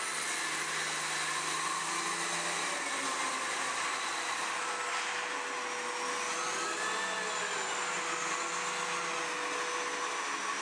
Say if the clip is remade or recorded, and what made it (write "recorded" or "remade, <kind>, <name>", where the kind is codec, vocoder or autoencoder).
recorded